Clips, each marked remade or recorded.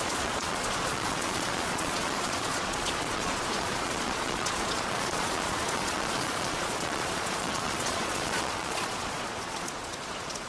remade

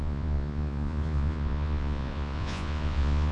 remade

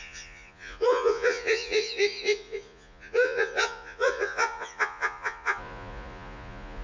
remade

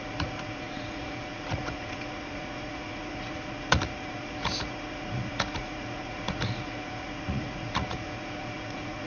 remade